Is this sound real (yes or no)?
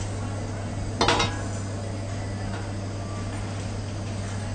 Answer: yes